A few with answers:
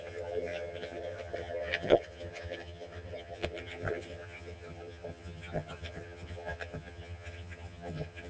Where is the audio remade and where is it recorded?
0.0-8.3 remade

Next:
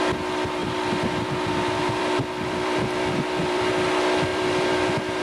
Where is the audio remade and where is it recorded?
0.0-0.6 recorded; 0.6-3.7 remade; 3.7-4.3 recorded; 4.3-5.2 remade

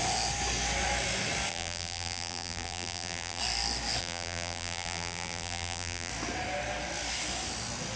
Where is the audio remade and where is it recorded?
0.0-1.5 recorded; 1.5-3.4 remade; 3.4-4.0 recorded; 4.0-6.1 remade; 6.1-8.0 recorded

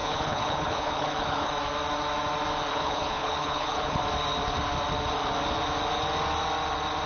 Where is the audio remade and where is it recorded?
0.0-1.5 remade; 1.5-2.7 recorded; 2.7-4.0 remade; 4.0-7.1 recorded

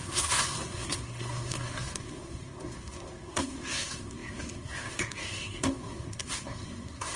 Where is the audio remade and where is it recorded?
0.0-7.2 remade

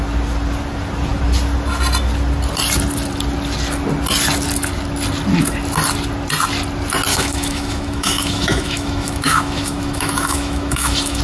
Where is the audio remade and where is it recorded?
0.0-7.1 recorded; 7.1-11.2 remade